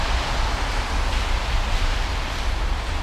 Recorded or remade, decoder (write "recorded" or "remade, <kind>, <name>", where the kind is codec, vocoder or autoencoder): recorded